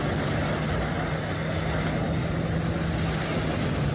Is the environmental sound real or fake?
real